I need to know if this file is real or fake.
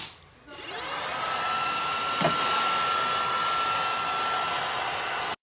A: real